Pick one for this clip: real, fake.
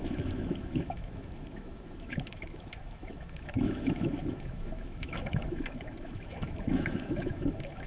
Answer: fake